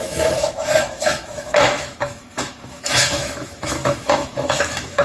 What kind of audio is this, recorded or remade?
remade